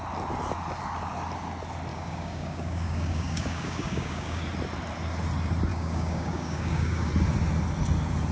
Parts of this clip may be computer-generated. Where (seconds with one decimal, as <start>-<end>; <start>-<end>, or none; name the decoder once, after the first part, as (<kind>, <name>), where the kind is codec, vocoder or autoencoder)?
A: 1.9-4.4 (codec, DAC); 5.7-7.1